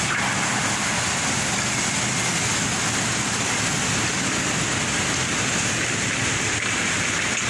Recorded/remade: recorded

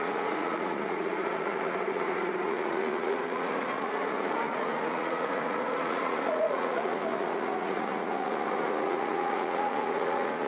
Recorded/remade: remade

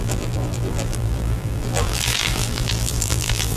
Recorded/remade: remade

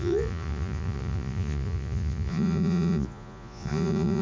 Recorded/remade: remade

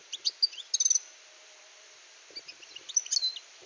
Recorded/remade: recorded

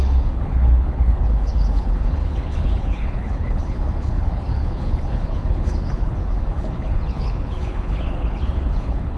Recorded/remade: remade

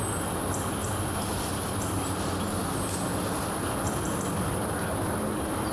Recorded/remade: recorded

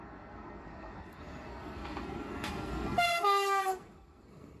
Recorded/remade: remade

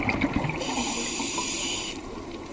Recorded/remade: recorded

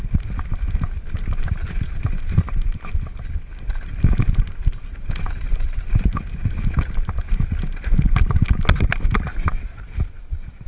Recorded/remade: recorded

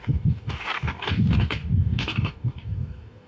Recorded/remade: remade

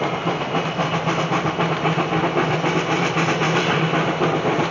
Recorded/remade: recorded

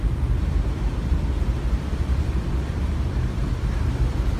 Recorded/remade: remade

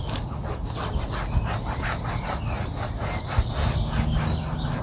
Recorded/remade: recorded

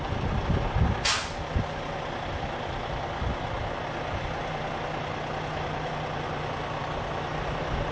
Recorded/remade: recorded